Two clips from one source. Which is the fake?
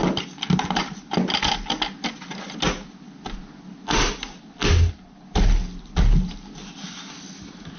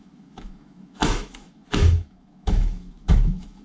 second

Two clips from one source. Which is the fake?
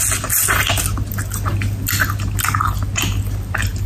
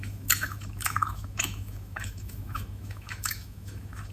second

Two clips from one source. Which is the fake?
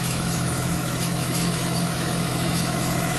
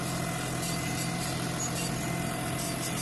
first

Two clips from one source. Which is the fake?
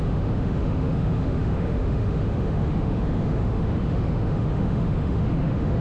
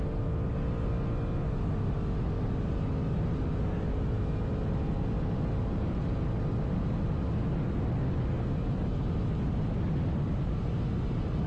first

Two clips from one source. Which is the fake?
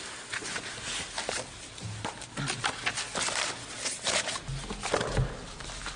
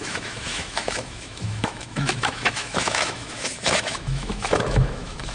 second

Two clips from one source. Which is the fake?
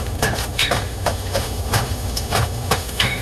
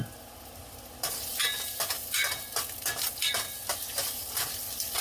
first